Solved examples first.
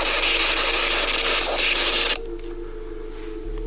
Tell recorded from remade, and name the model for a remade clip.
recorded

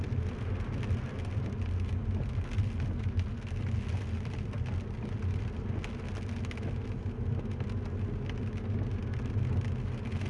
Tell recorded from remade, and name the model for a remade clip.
recorded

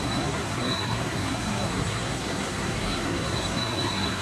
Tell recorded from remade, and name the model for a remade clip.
remade, codec, SNAC